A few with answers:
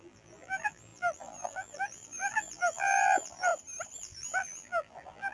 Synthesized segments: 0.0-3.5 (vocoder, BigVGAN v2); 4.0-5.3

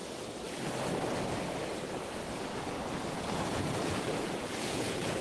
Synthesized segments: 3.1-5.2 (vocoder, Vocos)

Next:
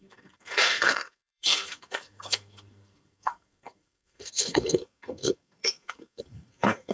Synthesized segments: 0.0-6.9 (codec, SNAC)

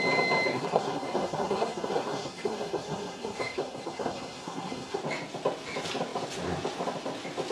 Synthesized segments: 0.5-5.0 (codec, SNAC)

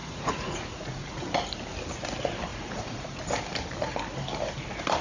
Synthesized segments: 0.0-1.2 (vocoder, Vocos); 2.5-3.2

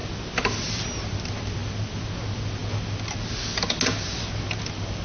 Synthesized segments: none

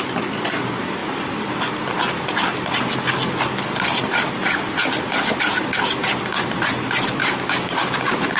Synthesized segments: 7.2-8.4 (codec, DAC)

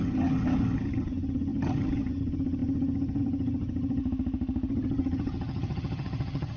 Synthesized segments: 0.0-4.0 (vocoder, HiFi-GAN); 4.7-6.6